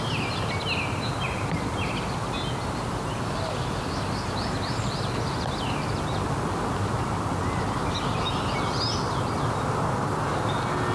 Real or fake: real